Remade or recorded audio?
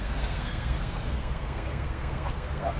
remade